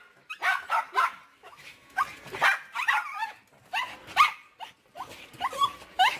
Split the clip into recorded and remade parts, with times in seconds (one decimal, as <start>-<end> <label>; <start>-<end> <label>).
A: 0.0-1.4 recorded; 1.4-2.0 remade; 2.0-6.2 recorded